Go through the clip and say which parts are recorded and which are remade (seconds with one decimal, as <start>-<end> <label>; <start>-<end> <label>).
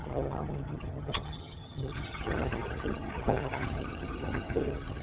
0.0-5.0 remade